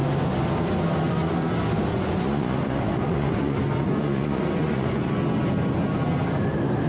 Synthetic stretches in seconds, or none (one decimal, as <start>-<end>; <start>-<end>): 1.9-5.1